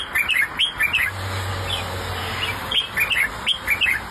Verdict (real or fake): real